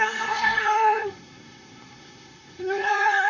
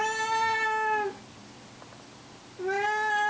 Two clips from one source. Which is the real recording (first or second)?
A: second